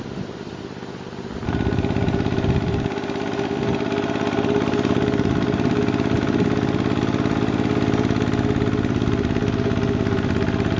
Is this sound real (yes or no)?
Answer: yes